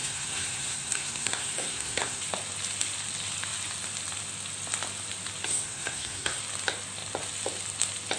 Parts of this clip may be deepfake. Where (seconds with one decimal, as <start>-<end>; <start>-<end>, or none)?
0.0-2.2; 5.5-6.4

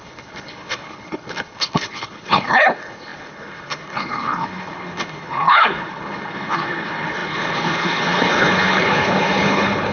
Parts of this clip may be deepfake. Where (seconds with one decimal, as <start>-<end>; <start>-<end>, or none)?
0.0-9.9

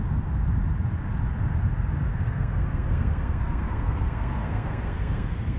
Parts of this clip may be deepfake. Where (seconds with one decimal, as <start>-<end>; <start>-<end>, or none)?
2.1-5.6

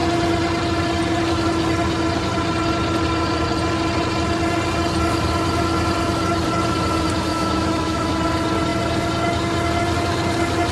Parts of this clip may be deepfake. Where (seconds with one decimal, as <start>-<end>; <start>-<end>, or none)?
7.3-8.1

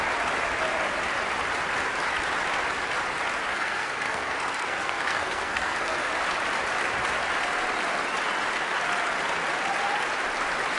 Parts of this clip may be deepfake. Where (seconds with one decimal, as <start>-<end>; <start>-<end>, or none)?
3.5-6.1

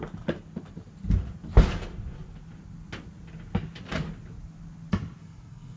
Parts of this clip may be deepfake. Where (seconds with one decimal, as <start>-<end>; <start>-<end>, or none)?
5.2-5.8

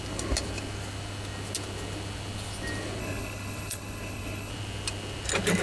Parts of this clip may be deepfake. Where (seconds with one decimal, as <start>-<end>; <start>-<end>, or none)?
3.0-4.5